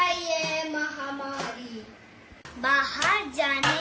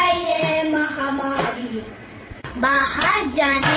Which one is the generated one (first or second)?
second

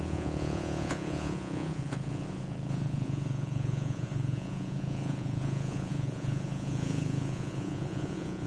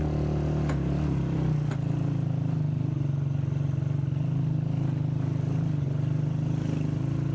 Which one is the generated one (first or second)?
first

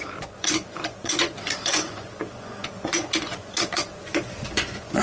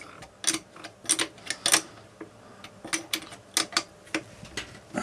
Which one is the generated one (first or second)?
first